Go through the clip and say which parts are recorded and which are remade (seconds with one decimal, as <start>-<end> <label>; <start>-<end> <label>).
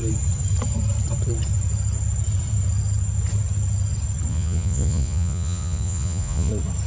0.0-4.3 recorded; 4.3-6.5 remade; 6.5-6.9 recorded